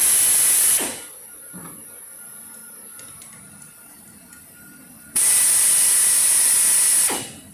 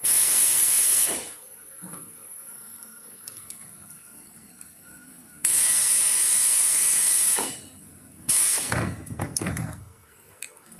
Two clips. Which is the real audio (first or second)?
first